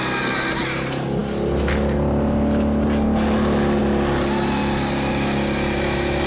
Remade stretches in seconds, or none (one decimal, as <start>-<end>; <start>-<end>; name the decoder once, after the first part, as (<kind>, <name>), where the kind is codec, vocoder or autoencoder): none